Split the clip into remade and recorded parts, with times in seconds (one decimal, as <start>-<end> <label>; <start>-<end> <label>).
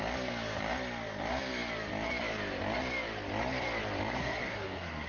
0.0-4.2 recorded; 4.2-5.1 remade